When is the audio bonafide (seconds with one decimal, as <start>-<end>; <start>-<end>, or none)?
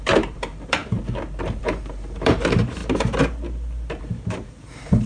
0.8-1.6; 2.8-4.0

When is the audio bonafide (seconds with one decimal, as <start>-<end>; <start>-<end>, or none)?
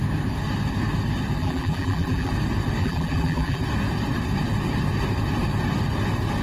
0.0-1.4; 2.3-2.8; 3.6-6.4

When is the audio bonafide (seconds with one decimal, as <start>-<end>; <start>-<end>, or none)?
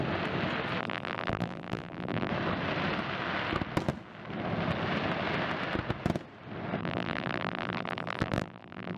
0.0-0.8; 2.3-6.8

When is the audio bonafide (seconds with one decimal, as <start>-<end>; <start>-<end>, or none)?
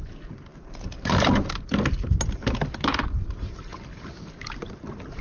0.0-3.7; 4.5-5.2